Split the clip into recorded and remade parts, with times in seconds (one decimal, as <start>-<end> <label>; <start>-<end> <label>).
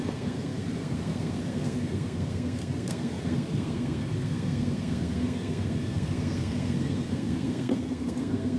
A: 0.0-8.6 remade